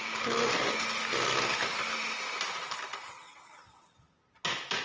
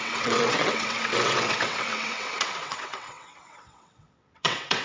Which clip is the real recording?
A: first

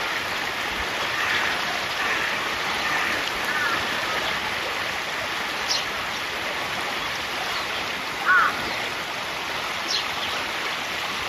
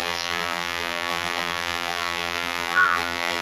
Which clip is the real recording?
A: first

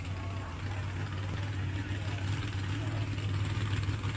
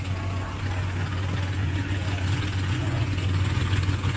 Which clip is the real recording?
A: first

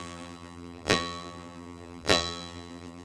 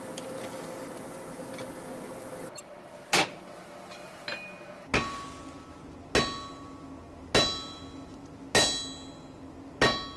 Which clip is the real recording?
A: second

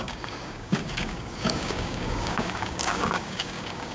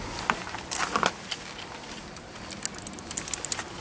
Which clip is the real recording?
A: second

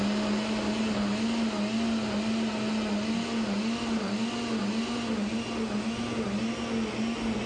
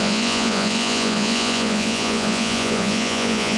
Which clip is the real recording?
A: first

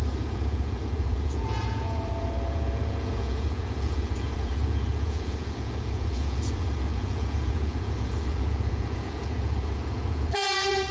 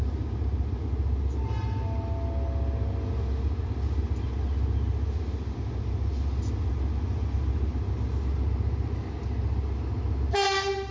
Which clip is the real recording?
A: second